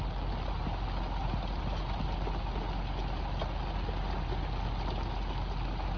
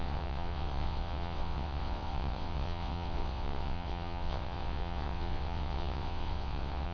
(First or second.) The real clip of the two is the first